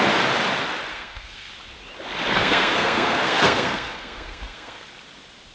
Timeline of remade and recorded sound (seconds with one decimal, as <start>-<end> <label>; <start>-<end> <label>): 0.0-0.9 recorded; 0.9-1.5 remade; 1.5-2.3 recorded; 2.3-4.9 remade; 4.9-5.5 recorded